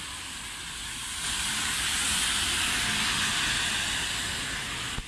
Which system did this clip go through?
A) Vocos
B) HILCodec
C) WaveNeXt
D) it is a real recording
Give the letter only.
D